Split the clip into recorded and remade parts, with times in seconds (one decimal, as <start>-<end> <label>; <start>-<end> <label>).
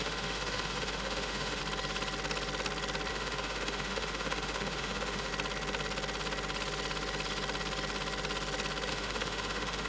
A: 0.0-1.6 remade; 1.6-3.1 recorded; 3.1-5.3 remade; 5.3-8.9 recorded; 8.9-9.9 remade